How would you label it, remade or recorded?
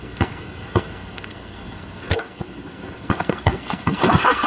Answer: remade